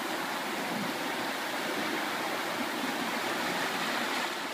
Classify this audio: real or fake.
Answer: real